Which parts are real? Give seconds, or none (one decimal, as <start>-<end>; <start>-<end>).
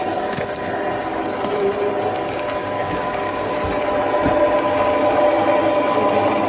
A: 0.0-2.6; 3.5-6.5